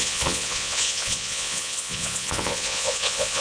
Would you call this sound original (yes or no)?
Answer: no